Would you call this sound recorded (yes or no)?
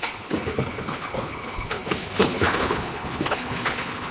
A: no